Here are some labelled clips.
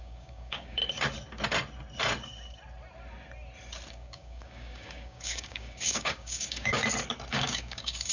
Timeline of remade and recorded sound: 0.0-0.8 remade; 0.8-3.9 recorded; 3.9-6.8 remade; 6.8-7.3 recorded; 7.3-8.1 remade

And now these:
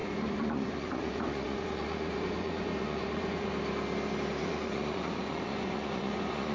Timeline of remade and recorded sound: 0.0-3.5 remade; 3.5-4.4 recorded; 4.4-6.5 remade

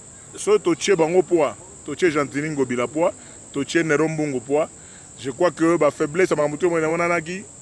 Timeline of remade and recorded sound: 0.0-7.6 recorded